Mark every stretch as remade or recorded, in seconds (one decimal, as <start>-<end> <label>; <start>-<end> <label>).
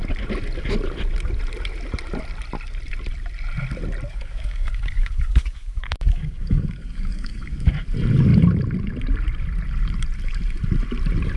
0.0-4.1 recorded; 4.1-7.7 remade; 7.7-11.4 recorded